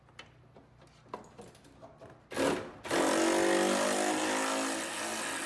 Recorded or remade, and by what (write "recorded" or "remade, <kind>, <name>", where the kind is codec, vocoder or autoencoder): recorded